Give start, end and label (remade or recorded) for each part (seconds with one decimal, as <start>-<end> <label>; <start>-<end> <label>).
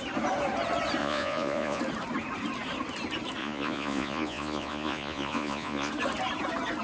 0.0-1.0 recorded; 1.0-1.8 remade; 1.8-3.4 recorded; 3.4-5.9 remade; 5.9-6.8 recorded